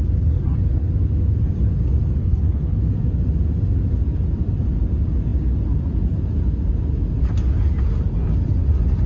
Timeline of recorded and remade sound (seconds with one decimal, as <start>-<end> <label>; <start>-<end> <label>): 0.0-2.2 recorded; 2.2-2.8 remade; 2.8-9.1 recorded